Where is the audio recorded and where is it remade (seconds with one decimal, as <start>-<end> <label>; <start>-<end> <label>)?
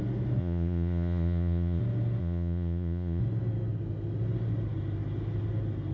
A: 0.0-0.4 recorded; 0.4-1.8 remade; 1.8-2.2 recorded; 2.2-3.2 remade; 3.2-5.9 recorded